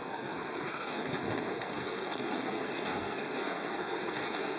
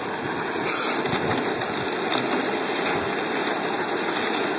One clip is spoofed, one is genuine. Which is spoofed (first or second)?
first